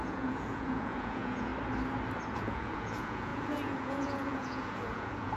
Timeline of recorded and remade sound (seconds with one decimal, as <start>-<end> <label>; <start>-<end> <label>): 0.0-1.5 remade; 1.5-2.3 recorded; 2.3-5.4 remade